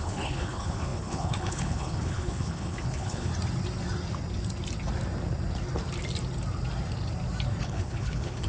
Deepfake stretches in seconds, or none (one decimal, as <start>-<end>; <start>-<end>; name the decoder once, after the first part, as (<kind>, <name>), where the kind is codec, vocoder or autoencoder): 0.0-3.3 (codec, HILCodec); 7.6-8.5